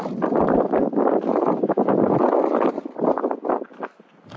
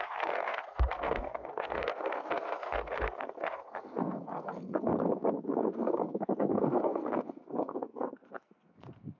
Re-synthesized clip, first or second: second